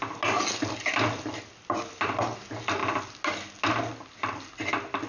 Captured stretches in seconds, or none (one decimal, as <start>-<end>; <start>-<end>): 0.0-5.1